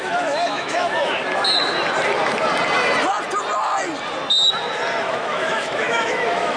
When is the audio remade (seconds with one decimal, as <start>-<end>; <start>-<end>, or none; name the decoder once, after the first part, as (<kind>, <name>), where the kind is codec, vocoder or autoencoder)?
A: 0.0-1.2 (autoencoder, DAC-VAE); 5.0-6.6